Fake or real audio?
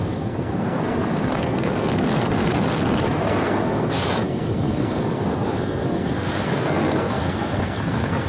fake